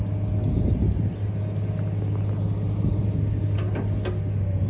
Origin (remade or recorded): recorded